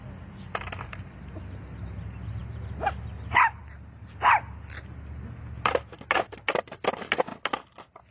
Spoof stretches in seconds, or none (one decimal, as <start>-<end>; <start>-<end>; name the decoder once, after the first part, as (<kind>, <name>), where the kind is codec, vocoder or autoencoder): none